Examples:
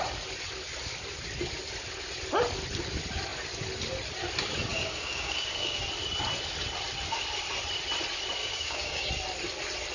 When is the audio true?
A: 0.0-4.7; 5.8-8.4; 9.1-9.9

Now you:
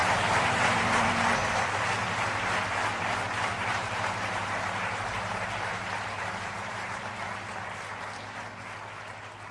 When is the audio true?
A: 3.1-3.5; 7.0-9.5

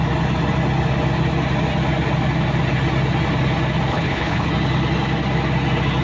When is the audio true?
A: 0.0-3.9; 4.5-6.0

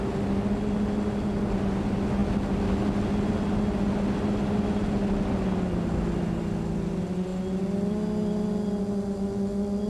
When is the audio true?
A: 0.0-9.9